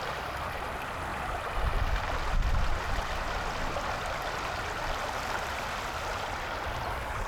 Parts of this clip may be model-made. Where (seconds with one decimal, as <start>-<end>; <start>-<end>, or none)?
none